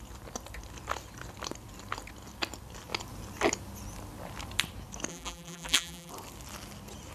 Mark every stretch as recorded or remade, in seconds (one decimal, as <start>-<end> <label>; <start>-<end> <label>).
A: 0.0-5.1 recorded; 5.1-6.1 remade; 6.1-7.1 recorded